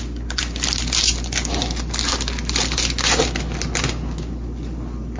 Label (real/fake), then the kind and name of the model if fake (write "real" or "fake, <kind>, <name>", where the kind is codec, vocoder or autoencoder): real